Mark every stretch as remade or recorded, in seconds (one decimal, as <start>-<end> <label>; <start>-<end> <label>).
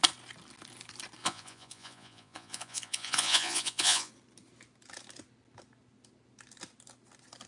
0.0-1.2 recorded; 1.2-4.1 remade; 4.1-7.5 recorded